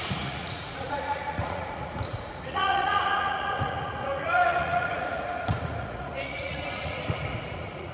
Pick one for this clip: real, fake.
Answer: fake